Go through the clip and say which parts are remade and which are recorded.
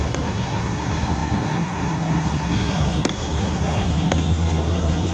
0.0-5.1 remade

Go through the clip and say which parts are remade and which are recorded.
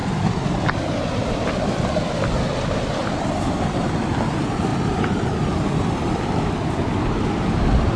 0.0-1.9 remade; 1.9-3.0 recorded; 3.0-3.9 remade; 3.9-4.7 recorded; 4.7-5.9 remade; 5.9-8.0 recorded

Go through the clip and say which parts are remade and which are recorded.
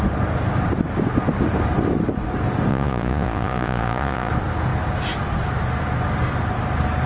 0.0-2.7 recorded; 2.7-4.3 remade; 4.3-7.1 recorded